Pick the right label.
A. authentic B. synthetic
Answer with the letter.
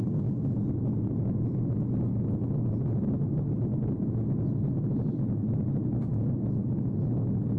A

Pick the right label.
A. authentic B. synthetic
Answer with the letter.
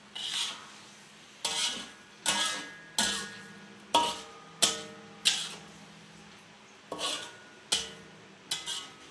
A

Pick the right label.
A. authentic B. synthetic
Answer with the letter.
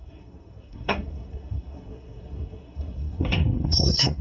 B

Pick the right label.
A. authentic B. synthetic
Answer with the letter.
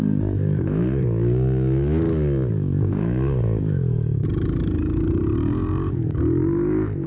B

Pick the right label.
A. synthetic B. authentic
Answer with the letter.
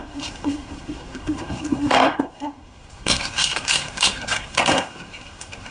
A